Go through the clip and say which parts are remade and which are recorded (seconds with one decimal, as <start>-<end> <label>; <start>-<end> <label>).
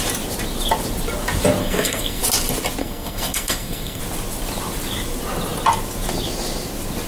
0.0-1.6 recorded; 1.6-2.2 remade; 2.2-2.8 recorded; 2.8-4.0 remade; 4.0-7.1 recorded